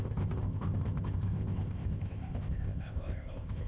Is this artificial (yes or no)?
yes